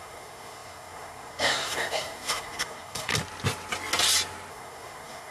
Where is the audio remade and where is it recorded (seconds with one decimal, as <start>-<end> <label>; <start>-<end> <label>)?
0.0-3.1 remade; 3.1-4.5 recorded; 4.5-5.3 remade